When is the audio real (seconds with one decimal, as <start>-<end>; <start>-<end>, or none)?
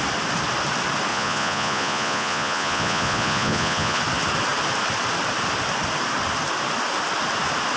0.0-1.1; 4.0-7.8